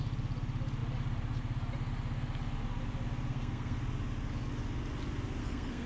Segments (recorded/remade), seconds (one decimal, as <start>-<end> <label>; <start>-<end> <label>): 0.0-3.3 recorded; 3.3-3.8 remade; 3.8-5.4 recorded; 5.4-5.9 remade